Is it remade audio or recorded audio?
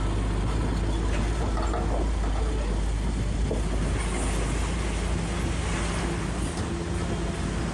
recorded